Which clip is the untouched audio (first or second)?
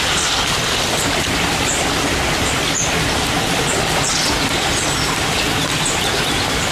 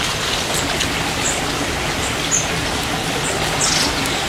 second